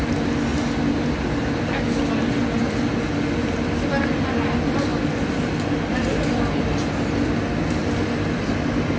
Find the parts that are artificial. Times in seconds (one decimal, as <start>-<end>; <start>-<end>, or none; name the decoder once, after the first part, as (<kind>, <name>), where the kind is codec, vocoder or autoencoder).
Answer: none